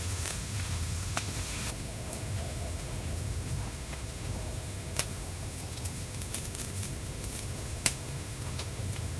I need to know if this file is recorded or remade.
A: remade